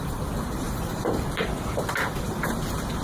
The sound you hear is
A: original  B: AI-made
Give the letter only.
B